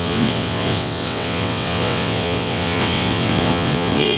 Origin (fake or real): fake